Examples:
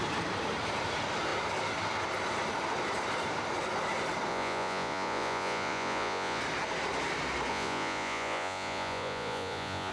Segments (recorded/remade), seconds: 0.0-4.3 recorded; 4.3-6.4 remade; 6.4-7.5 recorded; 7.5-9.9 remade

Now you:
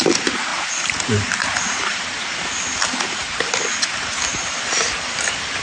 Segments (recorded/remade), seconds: 0.0-0.5 remade; 0.5-1.6 recorded; 1.6-2.2 remade; 2.2-2.9 recorded; 2.9-5.6 remade

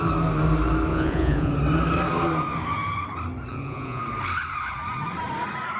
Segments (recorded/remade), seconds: 0.0-0.9 recorded; 0.9-1.5 remade; 1.5-3.5 recorded; 3.5-4.0 remade; 4.0-5.8 recorded

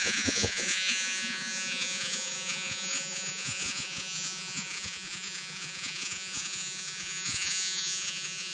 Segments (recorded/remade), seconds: 0.0-8.5 remade